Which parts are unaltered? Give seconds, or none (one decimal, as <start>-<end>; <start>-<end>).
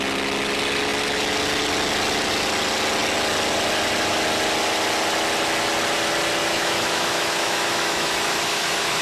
0.0-6.4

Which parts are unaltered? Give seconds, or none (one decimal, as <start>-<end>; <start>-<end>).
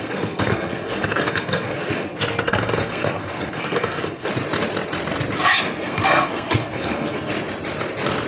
4.3-5.6; 7.3-8.3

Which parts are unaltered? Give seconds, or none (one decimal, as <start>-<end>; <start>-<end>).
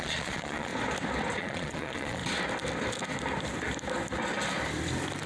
0.7-1.4; 2.2-5.3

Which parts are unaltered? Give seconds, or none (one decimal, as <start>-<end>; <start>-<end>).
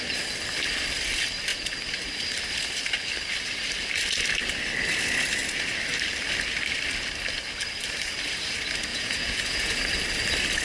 0.0-8.9; 9.8-10.6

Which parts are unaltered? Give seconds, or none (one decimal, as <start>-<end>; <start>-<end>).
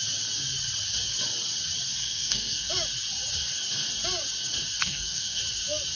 0.0-2.0; 2.7-4.8; 5.4-6.0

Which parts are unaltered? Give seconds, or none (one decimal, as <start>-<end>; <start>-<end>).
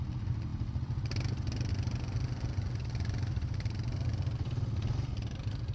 0.0-5.7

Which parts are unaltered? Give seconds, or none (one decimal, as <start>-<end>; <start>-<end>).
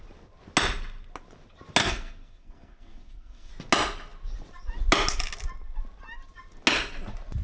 0.0-1.8; 3.5-7.4